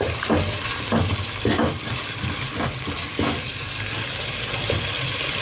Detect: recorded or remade recorded